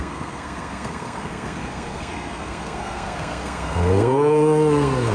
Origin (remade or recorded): remade